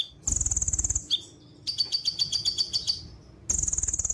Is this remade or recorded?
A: recorded